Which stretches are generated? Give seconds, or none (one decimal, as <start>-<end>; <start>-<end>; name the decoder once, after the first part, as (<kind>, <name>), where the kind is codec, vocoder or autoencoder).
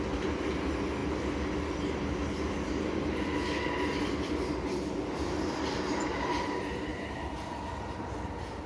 6.9-7.6 (vocoder, BigVGAN v2)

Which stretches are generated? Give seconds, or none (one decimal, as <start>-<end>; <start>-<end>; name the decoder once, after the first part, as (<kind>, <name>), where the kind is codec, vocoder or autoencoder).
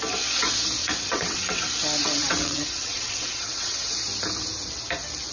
0.8-1.6 (vocoder, WaveNeXt); 2.0-3.9